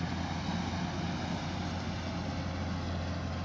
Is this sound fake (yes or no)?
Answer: no